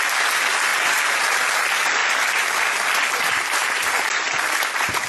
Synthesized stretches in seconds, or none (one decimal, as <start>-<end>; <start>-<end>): 2.0-4.3